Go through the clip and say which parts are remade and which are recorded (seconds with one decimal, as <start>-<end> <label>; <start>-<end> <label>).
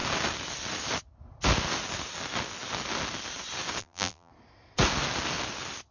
0.0-3.8 recorded; 3.8-4.3 remade; 4.3-5.9 recorded